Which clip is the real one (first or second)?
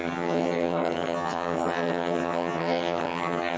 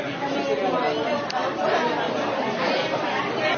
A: second